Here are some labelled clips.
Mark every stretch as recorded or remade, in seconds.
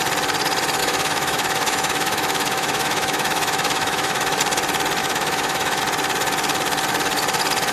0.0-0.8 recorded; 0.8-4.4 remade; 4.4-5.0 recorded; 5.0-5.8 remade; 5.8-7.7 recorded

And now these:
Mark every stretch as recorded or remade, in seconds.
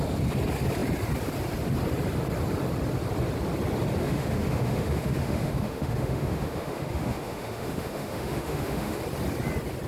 0.0-4.0 recorded; 4.0-9.0 remade; 9.0-9.9 recorded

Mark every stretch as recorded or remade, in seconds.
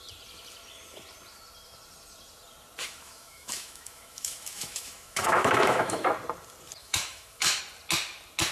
0.0-2.8 recorded; 2.8-6.1 remade; 6.1-6.8 recorded; 6.8-7.6 remade; 7.6-8.5 recorded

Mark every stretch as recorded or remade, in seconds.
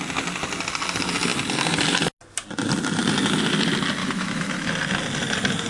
0.0-4.0 recorded; 4.0-4.7 remade; 4.7-5.7 recorded